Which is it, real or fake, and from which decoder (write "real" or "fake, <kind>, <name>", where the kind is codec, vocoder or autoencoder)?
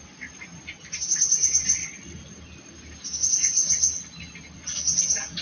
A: real